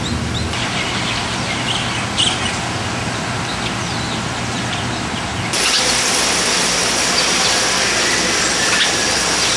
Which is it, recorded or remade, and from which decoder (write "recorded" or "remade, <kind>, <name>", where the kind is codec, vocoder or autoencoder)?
recorded